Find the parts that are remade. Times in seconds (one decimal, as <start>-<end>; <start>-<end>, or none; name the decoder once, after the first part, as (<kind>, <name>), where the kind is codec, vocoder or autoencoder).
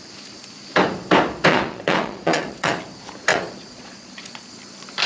1.5-2.8 (vocoder, Vocos); 3.3-4.5